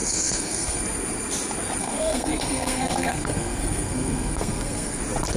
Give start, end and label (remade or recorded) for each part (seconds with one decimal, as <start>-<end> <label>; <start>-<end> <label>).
0.0-0.8 remade; 0.8-1.8 recorded; 1.8-5.0 remade; 5.0-5.4 recorded